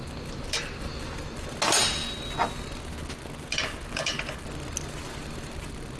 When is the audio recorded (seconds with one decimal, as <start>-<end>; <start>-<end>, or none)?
0.0-6.0